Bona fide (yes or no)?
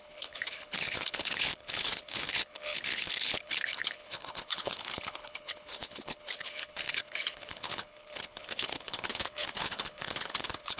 no